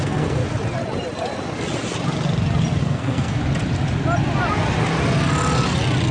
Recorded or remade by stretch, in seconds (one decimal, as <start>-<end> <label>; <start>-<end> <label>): 0.0-0.4 remade; 0.4-2.8 recorded; 2.8-3.4 remade; 3.4-6.1 recorded